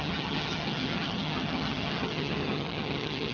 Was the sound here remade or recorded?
remade